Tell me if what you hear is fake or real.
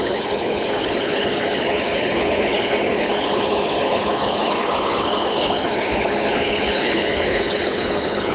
fake